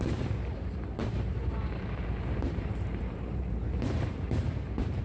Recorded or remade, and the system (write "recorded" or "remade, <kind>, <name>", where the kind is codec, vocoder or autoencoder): remade, vocoder, BigVGAN v2